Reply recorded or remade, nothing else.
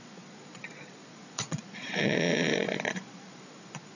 remade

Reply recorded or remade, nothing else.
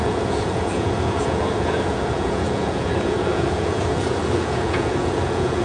remade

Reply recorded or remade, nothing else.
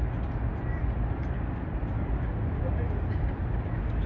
recorded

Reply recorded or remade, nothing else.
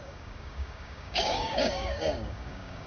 remade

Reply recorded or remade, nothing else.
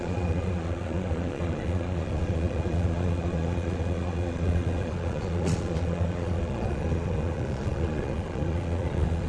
remade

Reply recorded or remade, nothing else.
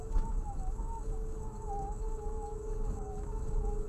remade